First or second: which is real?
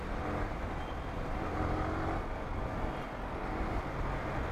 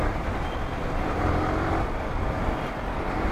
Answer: first